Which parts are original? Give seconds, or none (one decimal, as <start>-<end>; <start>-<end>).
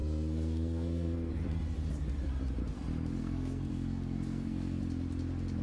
1.3-3.2; 4.8-5.6